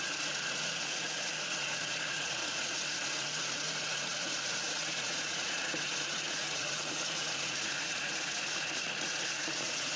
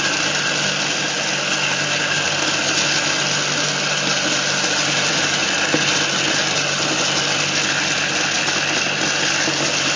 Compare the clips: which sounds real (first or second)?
second